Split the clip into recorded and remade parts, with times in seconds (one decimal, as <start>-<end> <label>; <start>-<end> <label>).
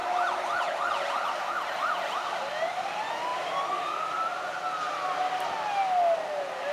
0.0-0.6 remade; 0.6-3.3 recorded; 3.3-4.5 remade; 4.5-6.7 recorded